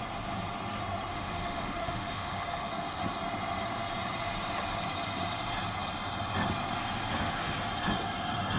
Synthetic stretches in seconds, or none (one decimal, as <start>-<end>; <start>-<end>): 1.1-2.7